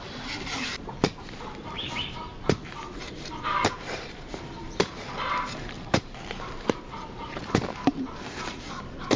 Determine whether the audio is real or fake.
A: fake